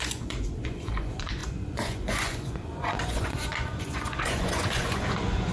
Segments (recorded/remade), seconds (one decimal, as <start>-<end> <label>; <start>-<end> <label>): 0.0-5.5 remade